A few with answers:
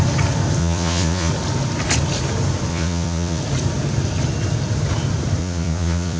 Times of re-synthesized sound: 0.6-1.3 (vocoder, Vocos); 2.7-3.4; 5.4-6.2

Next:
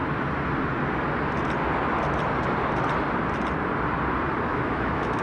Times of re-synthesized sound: 4.5-5.2 (autoencoder, DAC-VAE)

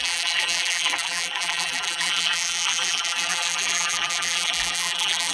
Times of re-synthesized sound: 0.0-5.3 (vocoder, BigVGAN v2)

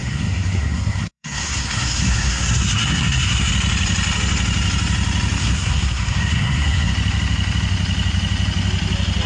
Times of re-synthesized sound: 0.0-3.5 (codec, SNAC); 5.4-6.9

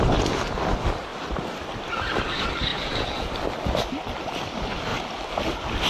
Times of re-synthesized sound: 2.7-3.3 (vocoder, Vocos)

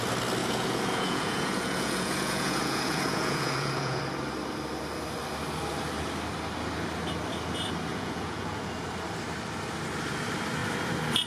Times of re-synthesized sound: 0.4-4.0 (vocoder, Vocos); 7.9-8.7

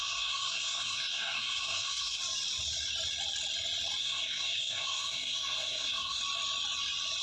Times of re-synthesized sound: 0.0-2.2 (codec, SNAC); 4.0-6.2